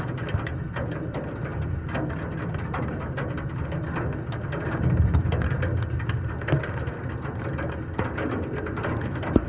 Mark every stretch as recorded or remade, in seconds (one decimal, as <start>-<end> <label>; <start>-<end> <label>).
0.0-9.5 recorded

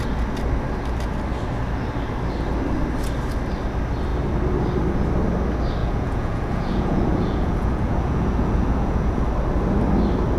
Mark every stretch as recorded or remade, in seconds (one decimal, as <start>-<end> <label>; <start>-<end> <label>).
0.0-5.8 recorded; 5.8-9.2 remade; 9.2-10.4 recorded

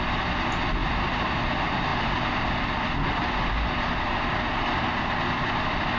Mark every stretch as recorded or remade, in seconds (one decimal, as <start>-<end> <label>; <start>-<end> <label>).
0.0-6.0 recorded

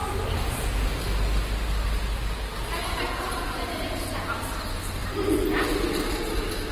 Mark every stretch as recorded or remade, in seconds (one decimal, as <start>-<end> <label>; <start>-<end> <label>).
0.0-6.7 recorded

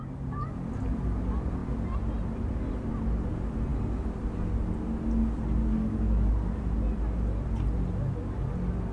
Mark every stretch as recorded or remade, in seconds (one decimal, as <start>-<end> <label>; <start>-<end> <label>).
0.0-5.6 recorded; 5.6-6.3 remade; 6.3-8.9 recorded

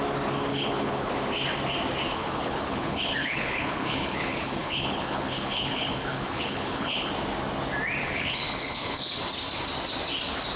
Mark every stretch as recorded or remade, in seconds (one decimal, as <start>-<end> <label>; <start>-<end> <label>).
0.0-0.5 recorded; 0.5-1.1 remade; 1.1-2.1 recorded; 2.1-7.1 remade; 7.1-8.0 recorded; 8.0-9.2 remade; 9.2-10.6 recorded

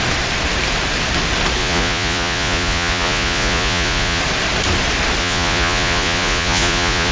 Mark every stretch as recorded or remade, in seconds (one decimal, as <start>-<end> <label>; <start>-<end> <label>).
0.0-1.6 recorded; 1.6-4.2 remade; 4.2-5.2 recorded; 5.2-7.1 remade

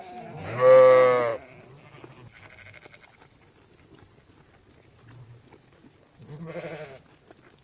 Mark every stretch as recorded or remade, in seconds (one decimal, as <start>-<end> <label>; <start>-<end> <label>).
0.0-7.6 recorded